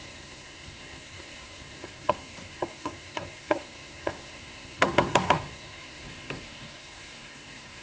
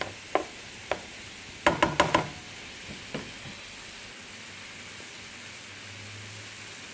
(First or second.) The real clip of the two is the second